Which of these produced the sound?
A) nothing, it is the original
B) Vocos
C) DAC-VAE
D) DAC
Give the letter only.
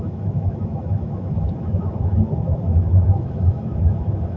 C